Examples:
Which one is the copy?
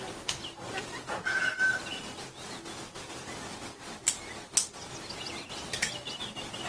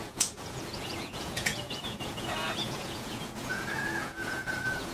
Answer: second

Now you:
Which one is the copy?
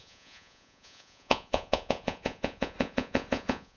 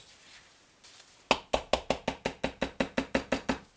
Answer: first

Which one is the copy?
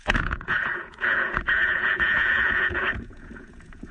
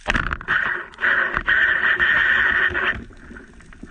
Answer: first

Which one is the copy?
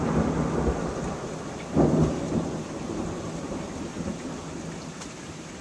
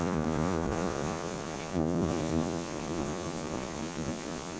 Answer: second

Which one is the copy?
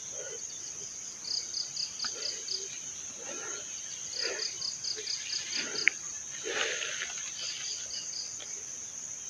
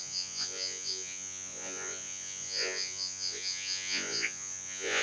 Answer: second